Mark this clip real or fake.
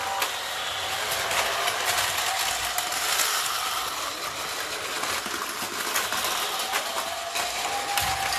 real